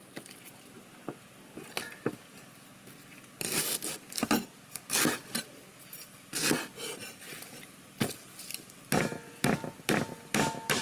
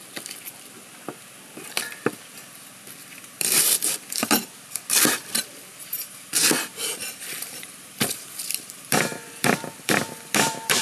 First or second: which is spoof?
second